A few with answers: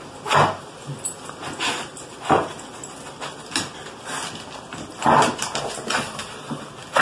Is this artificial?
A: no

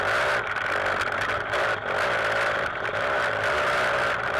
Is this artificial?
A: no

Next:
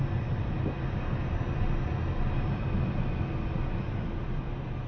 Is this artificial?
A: no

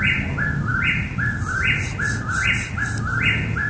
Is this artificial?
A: no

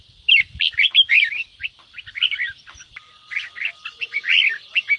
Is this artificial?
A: yes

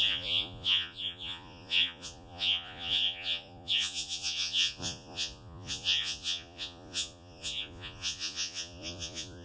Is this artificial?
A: yes